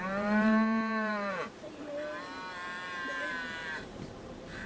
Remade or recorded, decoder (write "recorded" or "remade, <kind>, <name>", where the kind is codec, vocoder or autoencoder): remade, vocoder, BigVGAN v2